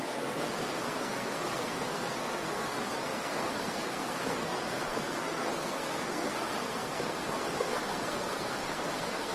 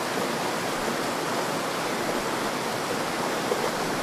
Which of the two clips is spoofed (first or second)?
first